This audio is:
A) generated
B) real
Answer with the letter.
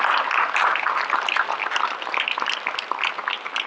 B